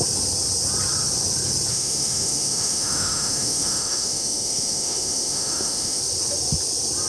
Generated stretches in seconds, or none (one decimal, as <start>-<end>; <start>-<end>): 1.7-6.0